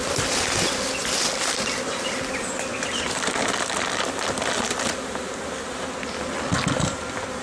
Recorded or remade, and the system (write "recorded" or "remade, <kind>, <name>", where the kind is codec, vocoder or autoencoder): recorded